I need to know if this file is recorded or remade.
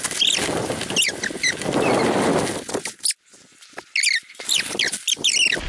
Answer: recorded